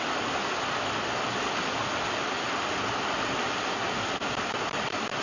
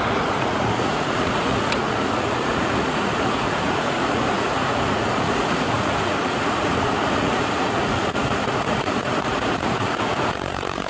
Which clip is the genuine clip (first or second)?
first